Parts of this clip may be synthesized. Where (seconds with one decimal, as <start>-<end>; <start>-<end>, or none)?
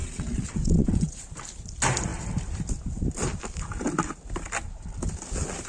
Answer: 0.0-1.2